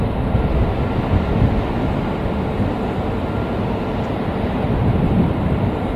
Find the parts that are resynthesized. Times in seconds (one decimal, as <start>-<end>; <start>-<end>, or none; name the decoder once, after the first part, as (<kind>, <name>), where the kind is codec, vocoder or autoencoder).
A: 0.0-0.5 (vocoder, BigVGAN v2); 4.1-6.0